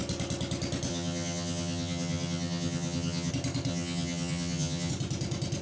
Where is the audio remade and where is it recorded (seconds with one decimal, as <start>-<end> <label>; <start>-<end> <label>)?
0.0-0.9 recorded; 0.9-3.3 remade; 3.3-3.7 recorded; 3.7-4.9 remade; 4.9-5.6 recorded